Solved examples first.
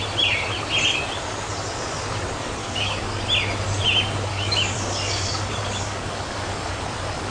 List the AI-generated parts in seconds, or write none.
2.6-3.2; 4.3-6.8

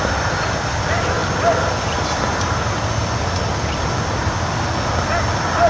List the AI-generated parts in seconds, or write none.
1.2-4.6

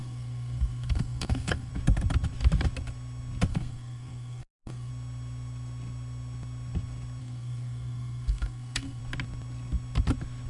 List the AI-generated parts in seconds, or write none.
0.0-1.7; 3.5-4.9; 7.2-9.0

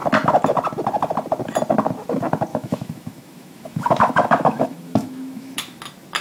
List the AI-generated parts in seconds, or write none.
2.5-5.8

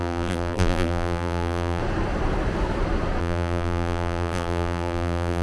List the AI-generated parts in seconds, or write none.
0.0-1.8; 3.2-5.4

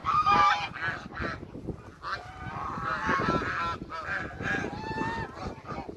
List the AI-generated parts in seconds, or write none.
0.0-0.5

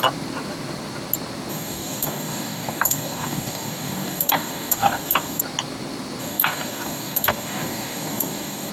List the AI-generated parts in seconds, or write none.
1.5-5.4; 6.2-8.7